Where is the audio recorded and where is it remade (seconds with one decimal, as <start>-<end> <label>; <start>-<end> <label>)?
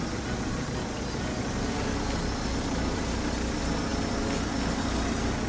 0.0-5.5 recorded